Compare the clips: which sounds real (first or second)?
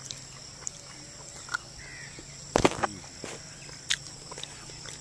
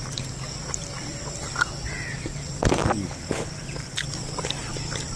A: first